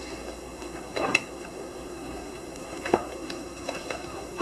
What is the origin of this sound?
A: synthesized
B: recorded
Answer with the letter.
A